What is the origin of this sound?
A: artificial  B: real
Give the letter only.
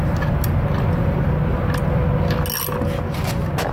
B